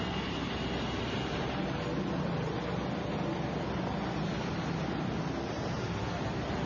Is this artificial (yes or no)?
no